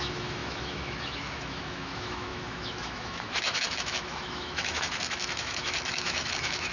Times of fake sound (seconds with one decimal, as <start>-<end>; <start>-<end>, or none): 0.0-6.7